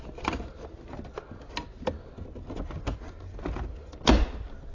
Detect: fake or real real